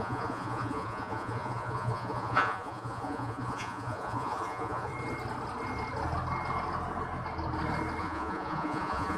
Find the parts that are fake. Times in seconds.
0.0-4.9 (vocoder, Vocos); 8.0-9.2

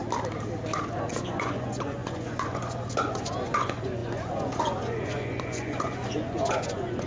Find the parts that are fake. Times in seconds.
1.1-7.1 (vocoder, Vocos)

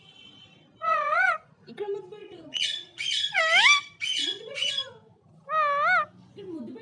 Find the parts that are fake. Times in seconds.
0.8-1.5 (vocoder, Vocos); 2.2-3.4; 4.1-4.7